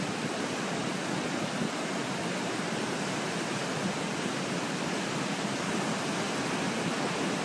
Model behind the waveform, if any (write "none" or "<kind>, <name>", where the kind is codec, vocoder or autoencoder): none